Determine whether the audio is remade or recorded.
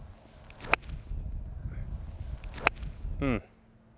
recorded